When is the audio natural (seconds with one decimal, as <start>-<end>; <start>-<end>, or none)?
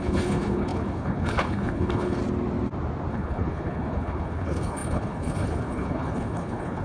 2.2-3.1